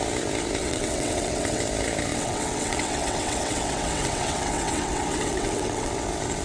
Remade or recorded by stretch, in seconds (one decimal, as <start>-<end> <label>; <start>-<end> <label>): 0.0-0.6 recorded; 0.6-1.6 remade; 1.6-2.1 recorded; 2.1-5.9 remade; 5.9-6.4 recorded